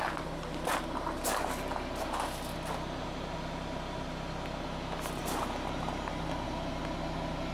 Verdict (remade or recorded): recorded